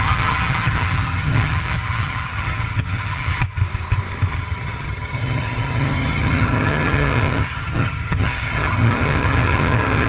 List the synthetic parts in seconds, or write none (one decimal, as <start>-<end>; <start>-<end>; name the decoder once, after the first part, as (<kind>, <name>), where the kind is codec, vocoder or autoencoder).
0.0-3.6 (vocoder, HiFi-GAN); 4.3-10.1